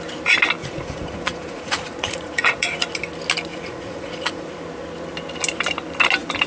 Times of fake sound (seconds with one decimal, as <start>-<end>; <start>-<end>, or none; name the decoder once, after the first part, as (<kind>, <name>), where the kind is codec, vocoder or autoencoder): 0.6-3.0 (vocoder, Vocos); 3.5-4.5